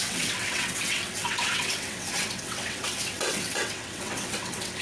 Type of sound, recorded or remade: remade